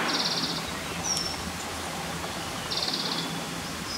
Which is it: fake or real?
real